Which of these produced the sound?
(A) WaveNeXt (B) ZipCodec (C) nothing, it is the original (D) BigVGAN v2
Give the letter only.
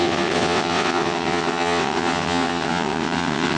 A